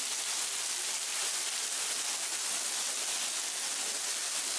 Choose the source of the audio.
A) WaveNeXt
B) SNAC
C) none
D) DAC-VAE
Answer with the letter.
C